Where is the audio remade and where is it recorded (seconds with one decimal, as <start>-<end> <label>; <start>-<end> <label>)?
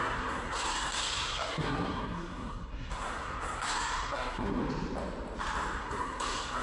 0.0-4.6 remade; 4.6-5.8 recorded; 5.8-6.6 remade